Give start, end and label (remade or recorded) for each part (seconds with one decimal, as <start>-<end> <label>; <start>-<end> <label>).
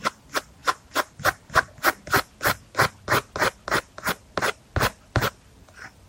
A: 0.0-6.1 recorded